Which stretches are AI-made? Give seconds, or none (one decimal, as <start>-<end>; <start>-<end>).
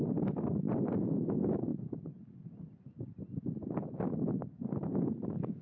none